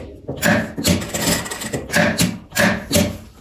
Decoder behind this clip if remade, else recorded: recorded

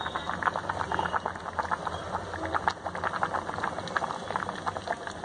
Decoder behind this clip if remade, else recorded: recorded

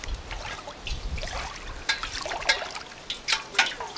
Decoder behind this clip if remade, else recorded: recorded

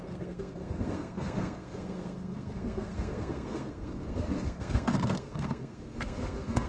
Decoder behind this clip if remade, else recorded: remade, codec, SNAC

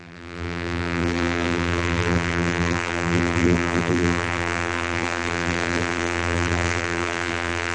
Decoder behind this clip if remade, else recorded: remade, vocoder, BigVGAN v2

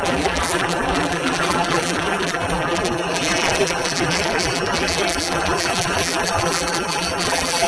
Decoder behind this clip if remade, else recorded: remade, vocoder, BigVGAN v2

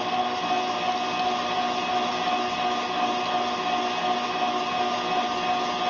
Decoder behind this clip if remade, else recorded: recorded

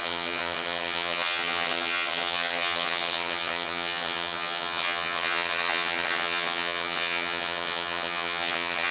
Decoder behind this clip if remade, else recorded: remade, vocoder, HiFi-GAN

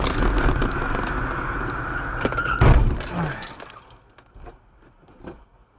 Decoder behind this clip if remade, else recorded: recorded